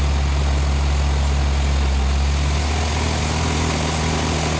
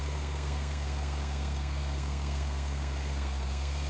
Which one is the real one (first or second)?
first